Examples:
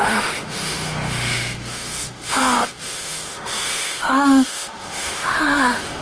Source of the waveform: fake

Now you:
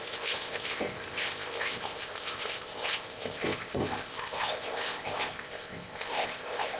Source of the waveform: fake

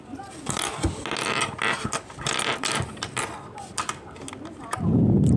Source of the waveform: real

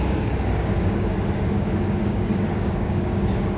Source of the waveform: fake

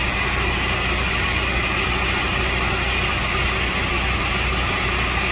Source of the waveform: real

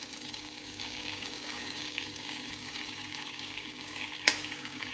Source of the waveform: fake